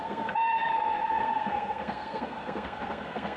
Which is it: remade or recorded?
remade